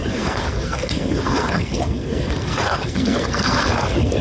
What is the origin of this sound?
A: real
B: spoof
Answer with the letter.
B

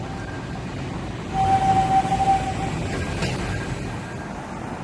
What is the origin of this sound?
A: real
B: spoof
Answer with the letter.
A